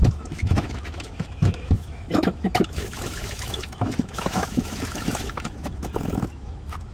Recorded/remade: remade